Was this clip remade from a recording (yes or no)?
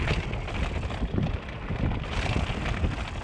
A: no